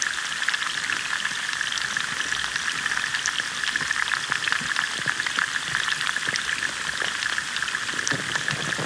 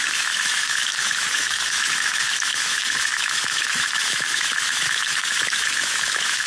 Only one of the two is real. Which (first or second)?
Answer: first